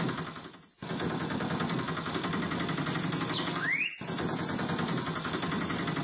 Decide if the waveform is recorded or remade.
recorded